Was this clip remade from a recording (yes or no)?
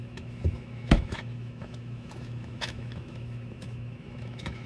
yes